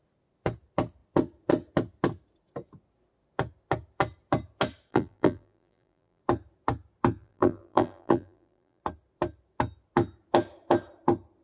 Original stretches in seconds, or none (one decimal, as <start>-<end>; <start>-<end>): 0.0-4.9; 6.2-7.2; 8.8-11.4

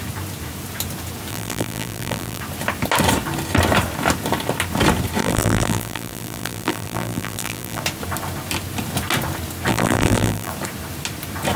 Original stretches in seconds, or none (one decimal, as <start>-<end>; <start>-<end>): 0.0-1.3; 2.4-5.2; 7.8-9.7; 10.5-11.6

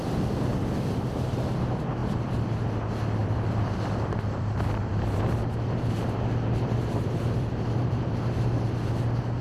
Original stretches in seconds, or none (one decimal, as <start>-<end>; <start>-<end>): 0.0-2.0; 2.6-3.2; 8.1-9.4

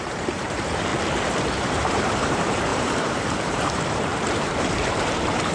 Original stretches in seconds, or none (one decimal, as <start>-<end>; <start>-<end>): 0.9-1.6

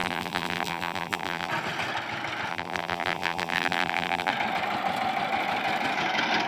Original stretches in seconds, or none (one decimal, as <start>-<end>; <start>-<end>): 1.5-2.5; 4.3-6.5

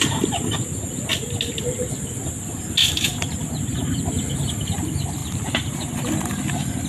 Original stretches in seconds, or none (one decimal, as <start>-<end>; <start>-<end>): 0.0-2.8; 4.0-5.2; 6.3-6.9

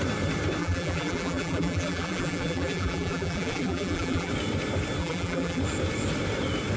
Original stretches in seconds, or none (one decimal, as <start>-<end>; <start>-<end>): 0.0-0.6; 4.3-5.0; 5.6-6.8